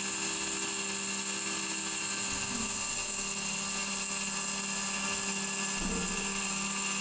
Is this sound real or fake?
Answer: real